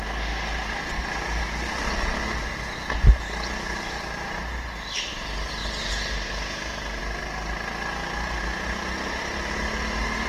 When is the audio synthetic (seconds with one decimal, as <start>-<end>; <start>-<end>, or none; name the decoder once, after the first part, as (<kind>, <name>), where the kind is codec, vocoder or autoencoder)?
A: 5.6-7.0 (vocoder, BigVGAN v2)